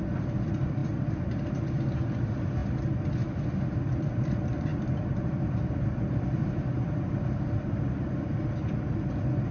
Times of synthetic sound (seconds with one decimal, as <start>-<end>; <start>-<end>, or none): 0.0-2.6; 3.6-9.5